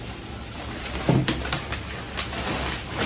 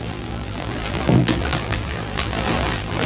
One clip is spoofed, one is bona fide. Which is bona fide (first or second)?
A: first